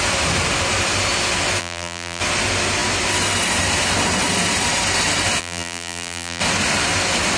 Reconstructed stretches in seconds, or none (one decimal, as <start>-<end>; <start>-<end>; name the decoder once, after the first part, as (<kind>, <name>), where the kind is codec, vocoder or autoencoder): 1.6-2.2 (vocoder, BigVGAN v2); 5.4-6.4